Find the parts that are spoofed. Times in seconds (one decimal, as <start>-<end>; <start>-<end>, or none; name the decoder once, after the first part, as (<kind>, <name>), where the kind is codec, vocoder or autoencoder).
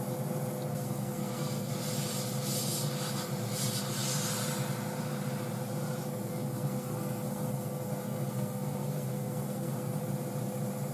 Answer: 0.7-1.7 (codec, SNAC); 6.3-10.0